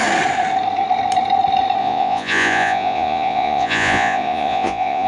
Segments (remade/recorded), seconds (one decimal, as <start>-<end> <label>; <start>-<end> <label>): 0.0-1.8 recorded; 1.8-5.1 remade